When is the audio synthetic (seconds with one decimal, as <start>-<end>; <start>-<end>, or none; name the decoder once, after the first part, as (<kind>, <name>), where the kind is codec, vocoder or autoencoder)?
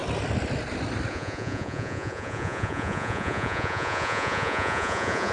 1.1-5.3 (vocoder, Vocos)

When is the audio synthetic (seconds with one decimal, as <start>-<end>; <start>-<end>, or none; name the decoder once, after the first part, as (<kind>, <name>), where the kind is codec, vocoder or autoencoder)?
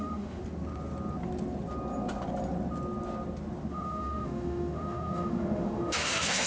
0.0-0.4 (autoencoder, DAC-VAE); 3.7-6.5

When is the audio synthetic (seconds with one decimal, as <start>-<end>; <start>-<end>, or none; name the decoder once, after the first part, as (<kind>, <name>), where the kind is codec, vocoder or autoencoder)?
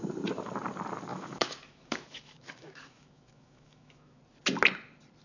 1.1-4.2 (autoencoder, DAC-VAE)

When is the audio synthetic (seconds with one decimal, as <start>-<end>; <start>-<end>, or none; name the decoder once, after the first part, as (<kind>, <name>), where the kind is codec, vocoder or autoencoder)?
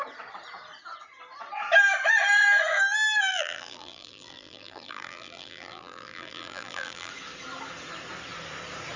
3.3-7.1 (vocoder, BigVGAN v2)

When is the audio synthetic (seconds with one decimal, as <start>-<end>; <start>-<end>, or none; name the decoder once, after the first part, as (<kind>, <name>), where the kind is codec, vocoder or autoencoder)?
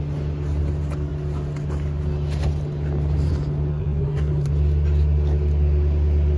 3.7-4.5 (codec, SNAC)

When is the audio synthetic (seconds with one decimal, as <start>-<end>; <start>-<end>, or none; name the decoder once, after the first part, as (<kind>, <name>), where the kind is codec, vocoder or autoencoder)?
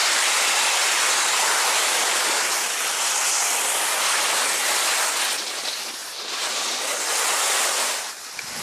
none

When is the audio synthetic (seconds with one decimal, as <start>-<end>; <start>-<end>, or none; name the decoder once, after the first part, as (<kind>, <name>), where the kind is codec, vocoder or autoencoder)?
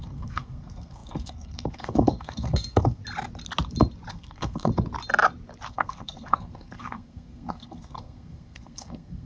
0.0-3.0 (codec, SNAC); 4.1-4.7; 5.7-9.3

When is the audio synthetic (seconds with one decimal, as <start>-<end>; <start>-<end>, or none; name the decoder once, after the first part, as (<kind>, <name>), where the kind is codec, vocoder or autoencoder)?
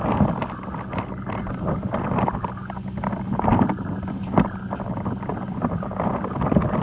none